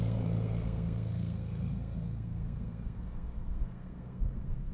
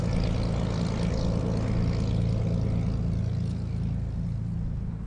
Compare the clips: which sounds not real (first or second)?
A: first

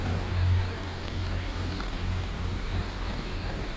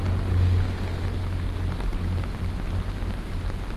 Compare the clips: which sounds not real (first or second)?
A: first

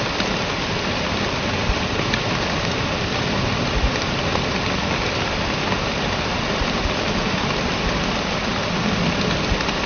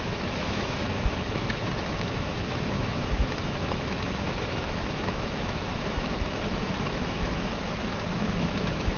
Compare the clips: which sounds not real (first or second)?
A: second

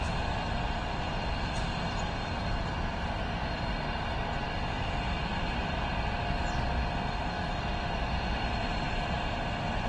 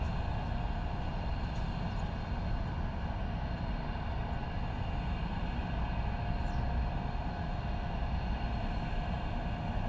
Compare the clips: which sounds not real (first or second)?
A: first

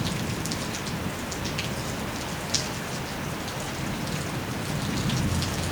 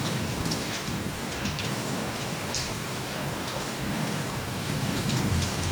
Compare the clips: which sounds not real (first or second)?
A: second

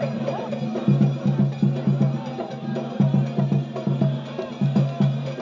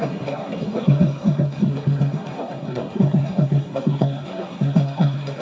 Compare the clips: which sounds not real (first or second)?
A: second